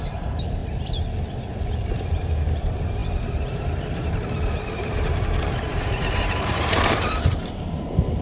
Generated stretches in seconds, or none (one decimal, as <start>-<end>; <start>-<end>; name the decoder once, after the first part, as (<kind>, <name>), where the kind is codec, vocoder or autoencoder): 0.0-0.6 (vocoder, BigVGAN v2); 1.8-8.2